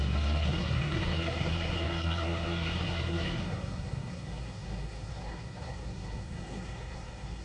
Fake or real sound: fake